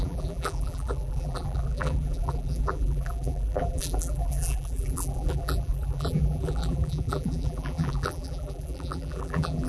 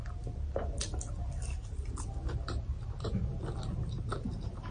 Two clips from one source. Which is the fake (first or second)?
first